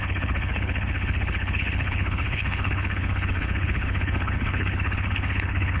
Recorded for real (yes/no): no